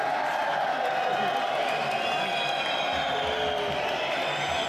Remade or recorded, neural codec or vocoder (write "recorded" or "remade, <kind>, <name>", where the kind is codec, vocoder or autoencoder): recorded